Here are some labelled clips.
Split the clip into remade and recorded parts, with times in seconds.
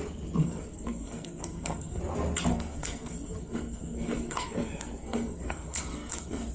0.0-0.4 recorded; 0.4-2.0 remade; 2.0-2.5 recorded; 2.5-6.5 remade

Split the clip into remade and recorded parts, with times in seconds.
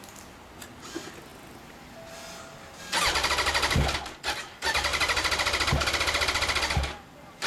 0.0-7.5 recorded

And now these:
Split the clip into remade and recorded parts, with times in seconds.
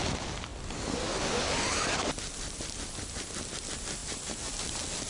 0.0-5.1 recorded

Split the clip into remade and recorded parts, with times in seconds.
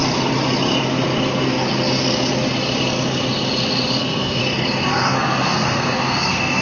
0.0-4.0 recorded; 4.0-4.4 remade; 4.4-4.9 recorded; 4.9-6.6 remade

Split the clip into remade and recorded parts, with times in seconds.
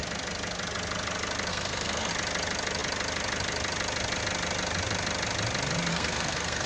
0.0-1.5 recorded; 1.5-2.1 remade; 2.1-5.9 recorded; 5.9-6.7 remade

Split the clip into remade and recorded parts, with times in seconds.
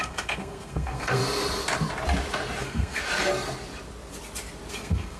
0.0-1.2 remade; 1.2-2.6 recorded; 2.6-3.0 remade; 3.0-4.7 recorded; 4.7-5.2 remade